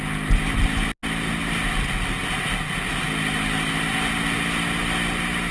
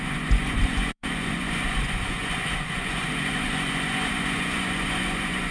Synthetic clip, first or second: second